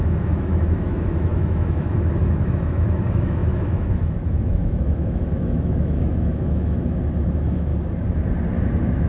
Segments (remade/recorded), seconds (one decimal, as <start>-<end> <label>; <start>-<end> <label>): 0.0-7.7 remade; 7.7-8.6 recorded; 8.6-9.1 remade